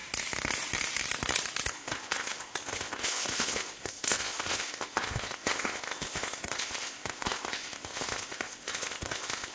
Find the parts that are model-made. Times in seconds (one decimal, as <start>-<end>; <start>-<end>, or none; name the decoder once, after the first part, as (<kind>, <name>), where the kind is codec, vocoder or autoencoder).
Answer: 1.7-9.5 (codec, ZipCodec)